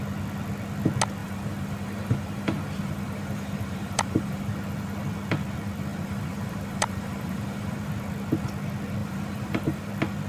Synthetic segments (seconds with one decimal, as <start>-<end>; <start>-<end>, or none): 1.2-4.4; 5.9-7.9; 9.0-9.9